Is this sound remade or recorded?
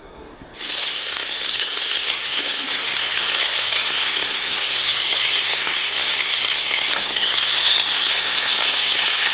remade